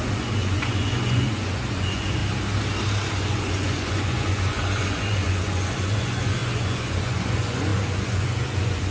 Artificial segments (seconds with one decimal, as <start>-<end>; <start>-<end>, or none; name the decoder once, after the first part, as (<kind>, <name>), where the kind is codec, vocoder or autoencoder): 0.0-2.2 (vocoder, Vocos); 3.1-8.9